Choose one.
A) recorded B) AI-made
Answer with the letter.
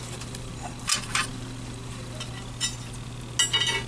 A